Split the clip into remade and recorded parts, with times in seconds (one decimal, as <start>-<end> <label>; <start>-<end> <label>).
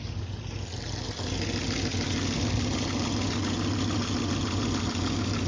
0.0-5.5 recorded